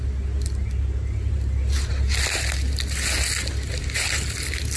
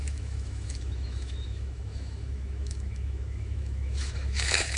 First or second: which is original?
first